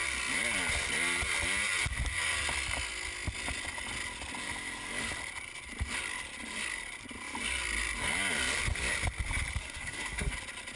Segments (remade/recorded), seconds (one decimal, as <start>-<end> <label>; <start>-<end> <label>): 0.0-9.6 recorded; 9.6-10.3 remade; 10.3-10.8 recorded